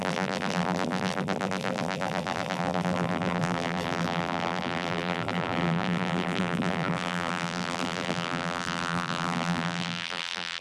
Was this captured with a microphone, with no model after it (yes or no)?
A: no